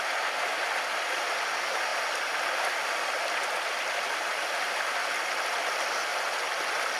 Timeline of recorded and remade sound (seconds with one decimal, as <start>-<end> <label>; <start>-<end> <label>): 0.0-7.0 recorded